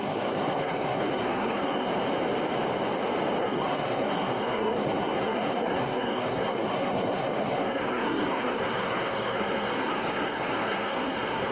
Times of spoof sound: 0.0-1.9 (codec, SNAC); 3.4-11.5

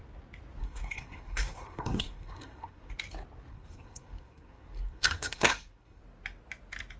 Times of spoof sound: 0.6-2.9 (codec, SNAC); 3.5-6.0

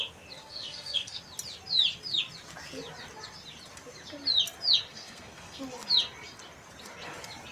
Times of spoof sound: 0.4-1.2 (codec, SNAC); 4.9-5.6

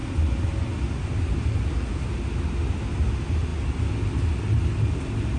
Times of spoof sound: none

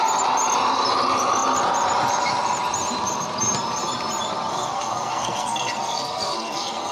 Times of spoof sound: 4.5-6.9 (codec, SNAC)